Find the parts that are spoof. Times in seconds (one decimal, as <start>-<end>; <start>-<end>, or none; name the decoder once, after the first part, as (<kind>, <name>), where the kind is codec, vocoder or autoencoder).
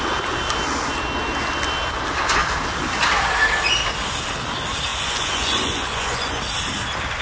4.9-6.4 (vocoder, Vocos)